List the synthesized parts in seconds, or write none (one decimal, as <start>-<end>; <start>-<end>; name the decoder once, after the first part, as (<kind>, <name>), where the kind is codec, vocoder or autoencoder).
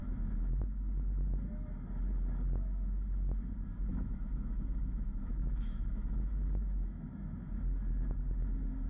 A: 0.0-0.6 (autoencoder, DAC-VAE); 3.9-7.4